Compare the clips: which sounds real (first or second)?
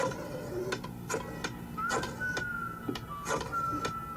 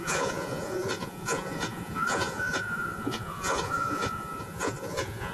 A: first